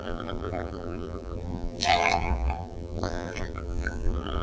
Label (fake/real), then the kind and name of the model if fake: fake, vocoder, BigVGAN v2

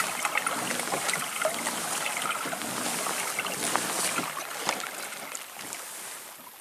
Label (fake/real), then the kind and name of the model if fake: real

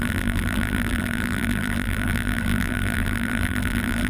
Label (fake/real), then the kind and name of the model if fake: fake, vocoder, BigVGAN v2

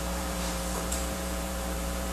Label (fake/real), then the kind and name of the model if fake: fake, vocoder, BigVGAN v2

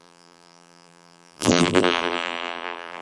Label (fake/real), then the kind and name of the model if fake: fake, vocoder, BigVGAN v2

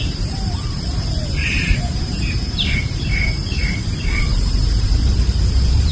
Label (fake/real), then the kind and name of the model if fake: fake, vocoder, BigVGAN v2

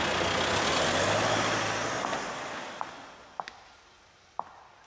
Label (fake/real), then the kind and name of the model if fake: real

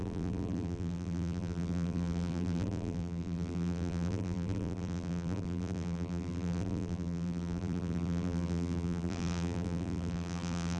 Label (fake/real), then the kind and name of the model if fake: fake, vocoder, BigVGAN v2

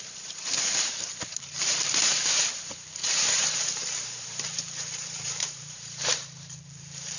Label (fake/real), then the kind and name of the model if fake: fake, vocoder, BigVGAN v2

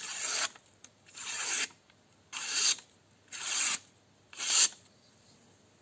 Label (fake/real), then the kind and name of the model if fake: real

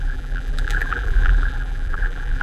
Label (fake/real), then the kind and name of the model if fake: fake, vocoder, BigVGAN v2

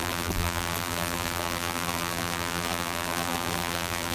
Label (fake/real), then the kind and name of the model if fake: fake, vocoder, BigVGAN v2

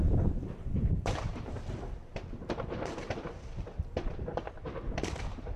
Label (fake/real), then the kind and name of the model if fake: fake, vocoder, BigVGAN v2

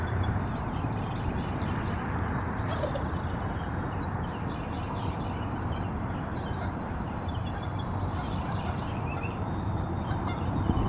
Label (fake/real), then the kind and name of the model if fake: fake, vocoder, BigVGAN v2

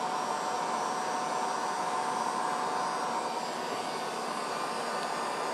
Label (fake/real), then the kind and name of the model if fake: real